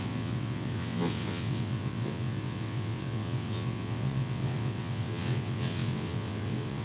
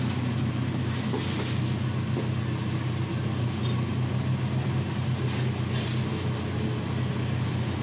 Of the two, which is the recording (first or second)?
second